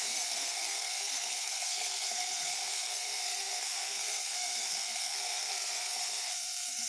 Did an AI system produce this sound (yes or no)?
yes